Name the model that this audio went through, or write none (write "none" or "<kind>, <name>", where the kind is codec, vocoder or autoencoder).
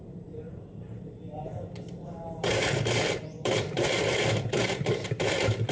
vocoder, BigVGAN v2